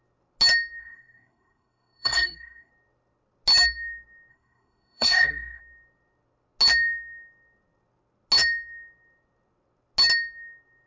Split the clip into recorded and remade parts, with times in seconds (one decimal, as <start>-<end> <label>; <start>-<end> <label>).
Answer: 0.0-0.8 recorded; 0.8-2.7 remade; 2.7-4.3 recorded; 4.3-5.6 remade; 5.6-10.9 recorded